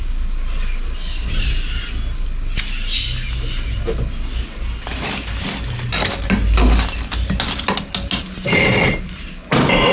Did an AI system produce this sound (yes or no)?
no